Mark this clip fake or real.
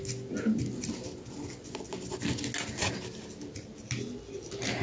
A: real